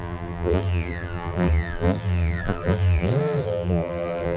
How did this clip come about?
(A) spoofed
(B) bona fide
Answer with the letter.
A